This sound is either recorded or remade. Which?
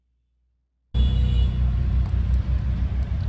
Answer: recorded